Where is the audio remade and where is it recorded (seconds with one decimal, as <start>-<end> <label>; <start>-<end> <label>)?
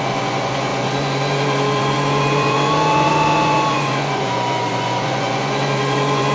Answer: 0.0-6.3 remade